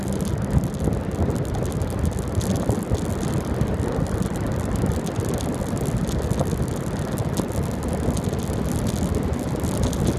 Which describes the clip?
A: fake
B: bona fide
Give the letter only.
B